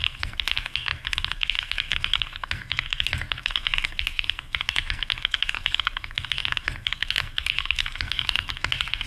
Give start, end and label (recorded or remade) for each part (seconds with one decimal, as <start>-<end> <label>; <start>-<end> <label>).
0.0-9.1 remade